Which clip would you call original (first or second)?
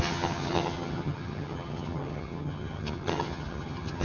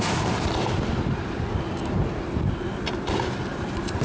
second